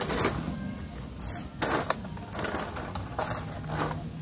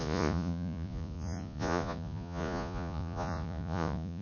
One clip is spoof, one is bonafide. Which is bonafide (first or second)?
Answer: first